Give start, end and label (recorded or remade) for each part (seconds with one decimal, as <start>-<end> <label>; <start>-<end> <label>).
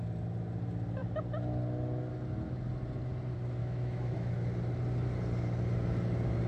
0.0-3.6 recorded; 3.6-4.3 remade; 4.3-6.5 recorded